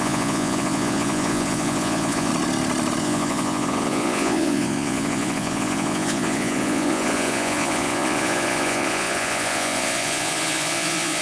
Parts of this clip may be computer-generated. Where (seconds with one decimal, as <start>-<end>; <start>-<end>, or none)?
0.0-2.3; 3.0-11.2